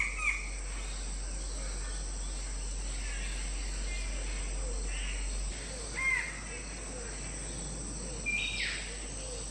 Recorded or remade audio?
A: recorded